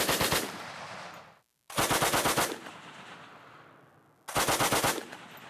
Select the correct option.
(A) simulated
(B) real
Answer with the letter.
B